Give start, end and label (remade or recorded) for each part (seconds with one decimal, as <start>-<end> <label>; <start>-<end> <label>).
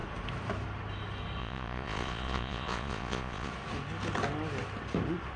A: 0.0-1.4 recorded; 1.4-3.5 remade; 3.5-5.4 recorded